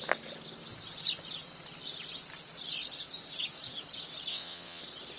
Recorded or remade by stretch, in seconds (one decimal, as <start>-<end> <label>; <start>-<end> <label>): 0.0-4.3 recorded; 4.3-4.8 remade; 4.8-5.2 recorded